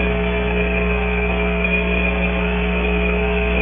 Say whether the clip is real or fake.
fake